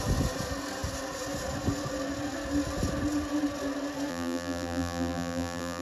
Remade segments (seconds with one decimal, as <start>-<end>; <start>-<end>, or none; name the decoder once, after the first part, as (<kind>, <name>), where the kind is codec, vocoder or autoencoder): 4.1-5.8 (vocoder, BigVGAN v2)